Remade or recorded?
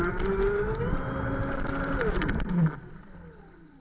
recorded